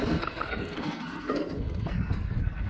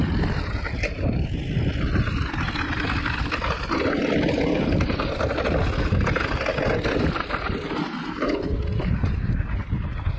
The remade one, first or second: first